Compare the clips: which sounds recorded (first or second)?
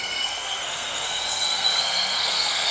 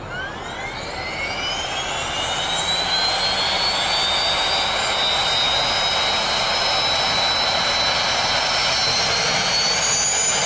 second